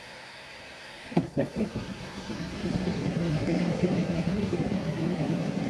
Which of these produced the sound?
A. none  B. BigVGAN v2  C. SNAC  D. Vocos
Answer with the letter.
C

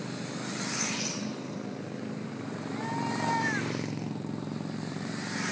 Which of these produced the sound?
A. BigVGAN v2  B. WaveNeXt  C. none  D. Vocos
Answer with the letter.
A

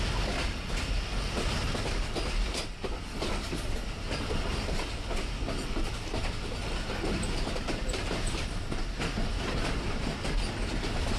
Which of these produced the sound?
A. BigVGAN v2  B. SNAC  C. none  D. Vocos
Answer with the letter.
C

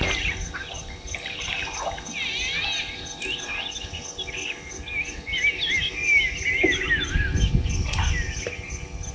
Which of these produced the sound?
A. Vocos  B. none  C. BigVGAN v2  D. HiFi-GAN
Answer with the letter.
B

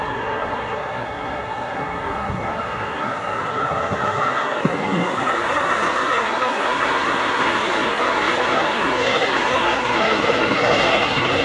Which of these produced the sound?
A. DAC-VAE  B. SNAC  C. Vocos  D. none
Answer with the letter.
B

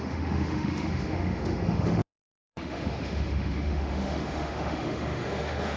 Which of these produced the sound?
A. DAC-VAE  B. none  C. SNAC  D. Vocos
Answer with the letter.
A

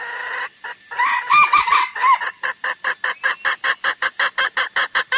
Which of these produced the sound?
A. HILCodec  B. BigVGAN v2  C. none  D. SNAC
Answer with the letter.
C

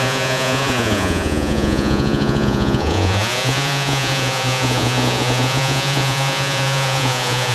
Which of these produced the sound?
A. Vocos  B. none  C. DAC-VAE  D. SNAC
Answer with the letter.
A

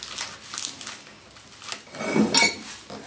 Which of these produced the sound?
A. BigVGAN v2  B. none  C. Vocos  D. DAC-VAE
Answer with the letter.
B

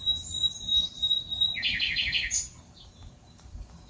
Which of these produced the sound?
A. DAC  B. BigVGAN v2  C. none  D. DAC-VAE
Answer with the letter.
C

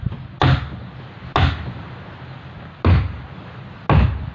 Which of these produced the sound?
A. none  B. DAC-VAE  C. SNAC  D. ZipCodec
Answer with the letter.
A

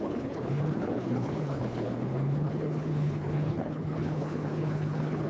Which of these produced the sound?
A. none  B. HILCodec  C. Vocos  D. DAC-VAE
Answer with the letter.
B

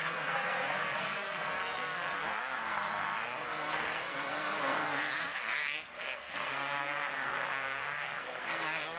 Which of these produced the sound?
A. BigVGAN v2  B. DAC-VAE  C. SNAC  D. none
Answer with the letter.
C